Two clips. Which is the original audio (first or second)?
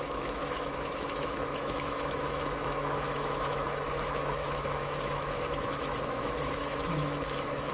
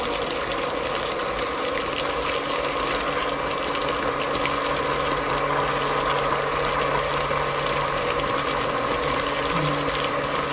second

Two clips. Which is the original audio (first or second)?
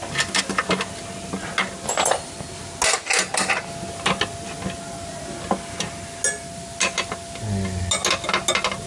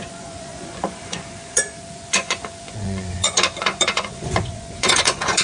first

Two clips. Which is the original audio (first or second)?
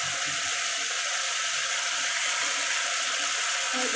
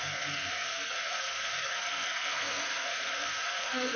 first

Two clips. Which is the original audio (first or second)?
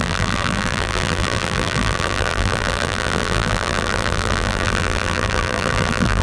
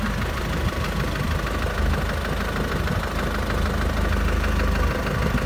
second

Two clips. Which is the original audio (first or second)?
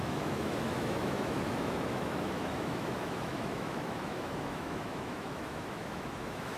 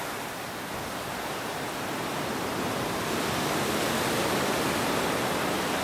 second